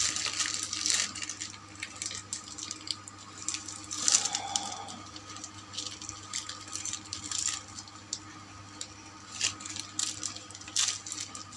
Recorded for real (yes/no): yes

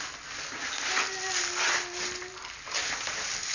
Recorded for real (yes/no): yes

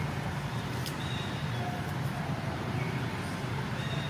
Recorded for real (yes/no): no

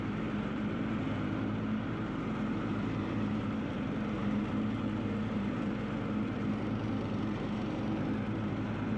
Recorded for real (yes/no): no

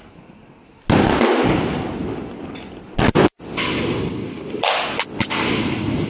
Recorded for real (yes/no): yes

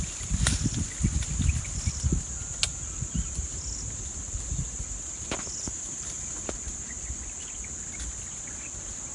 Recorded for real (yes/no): yes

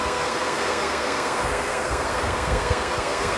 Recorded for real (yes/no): no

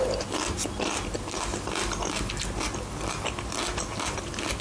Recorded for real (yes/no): yes